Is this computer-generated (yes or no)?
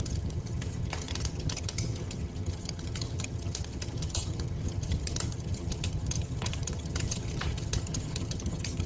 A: yes